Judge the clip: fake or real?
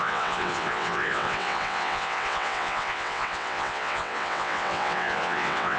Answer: fake